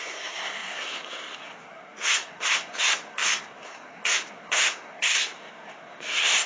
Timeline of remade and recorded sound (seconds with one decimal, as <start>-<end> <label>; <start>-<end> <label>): 0.0-6.5 remade